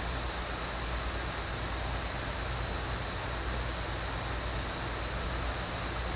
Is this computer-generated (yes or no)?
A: no